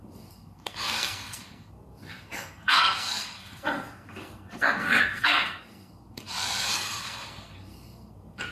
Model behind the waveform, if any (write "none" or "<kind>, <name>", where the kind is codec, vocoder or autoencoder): codec, SNAC